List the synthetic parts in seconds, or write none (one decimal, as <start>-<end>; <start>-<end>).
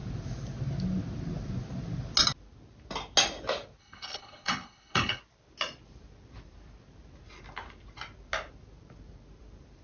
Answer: 3.8-5.2